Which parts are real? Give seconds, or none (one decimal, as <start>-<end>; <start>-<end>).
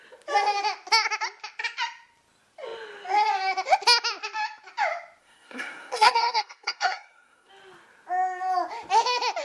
0.0-5.2; 7.5-9.4